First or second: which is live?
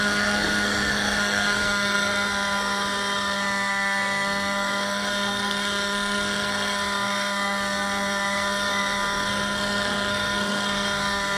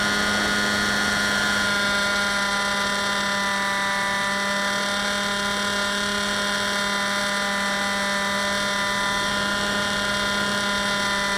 second